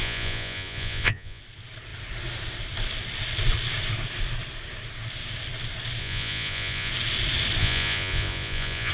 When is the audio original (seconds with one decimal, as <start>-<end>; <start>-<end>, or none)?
1.4-6.0; 6.9-7.6